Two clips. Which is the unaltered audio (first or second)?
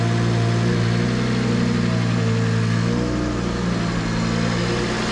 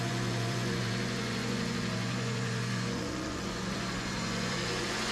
first